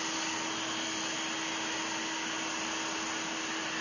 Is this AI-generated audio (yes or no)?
no